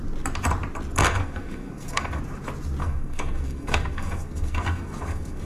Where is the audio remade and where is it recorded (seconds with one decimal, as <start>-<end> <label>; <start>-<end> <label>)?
0.0-1.0 recorded; 1.0-2.2 remade; 2.2-2.8 recorded; 2.8-5.5 remade